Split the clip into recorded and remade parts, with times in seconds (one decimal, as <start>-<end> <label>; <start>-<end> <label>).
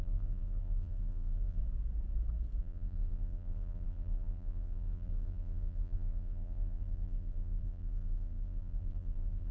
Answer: 0.0-1.6 remade; 1.6-2.6 recorded; 2.6-9.5 remade